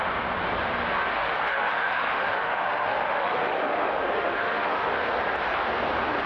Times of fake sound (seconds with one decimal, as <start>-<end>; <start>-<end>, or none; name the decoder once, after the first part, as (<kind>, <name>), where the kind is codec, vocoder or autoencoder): 1.1-4.9 (autoencoder, DAC-VAE)